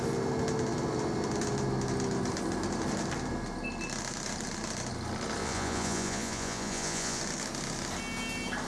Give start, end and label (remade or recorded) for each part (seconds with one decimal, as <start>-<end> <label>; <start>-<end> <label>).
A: 0.0-5.4 recorded; 5.4-7.2 remade; 7.2-8.7 recorded

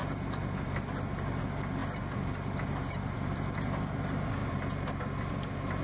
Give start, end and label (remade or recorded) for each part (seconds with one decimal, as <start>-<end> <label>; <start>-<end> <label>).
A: 0.0-5.8 recorded

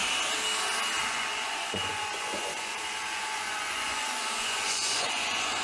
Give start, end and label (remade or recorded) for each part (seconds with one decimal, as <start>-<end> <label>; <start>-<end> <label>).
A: 0.0-1.1 recorded; 1.1-5.6 remade

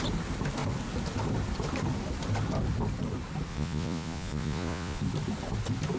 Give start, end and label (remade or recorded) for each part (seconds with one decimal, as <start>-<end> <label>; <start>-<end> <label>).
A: 0.0-3.5 recorded; 3.5-5.0 remade; 5.0-6.0 recorded

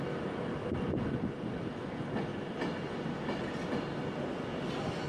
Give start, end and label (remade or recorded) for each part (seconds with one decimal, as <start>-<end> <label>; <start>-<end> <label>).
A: 0.0-5.1 recorded

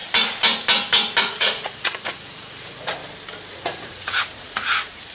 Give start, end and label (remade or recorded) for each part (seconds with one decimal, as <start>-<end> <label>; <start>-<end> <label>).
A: 0.0-1.2 recorded; 1.2-3.0 remade; 3.0-3.5 recorded; 3.5-5.1 remade

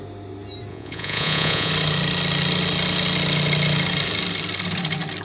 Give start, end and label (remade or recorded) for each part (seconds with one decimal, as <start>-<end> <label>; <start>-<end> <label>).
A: 0.0-0.7 recorded; 0.7-1.7 remade; 1.7-5.2 recorded